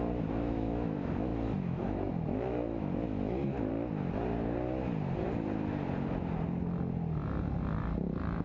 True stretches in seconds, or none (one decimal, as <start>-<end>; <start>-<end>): 3.7-8.4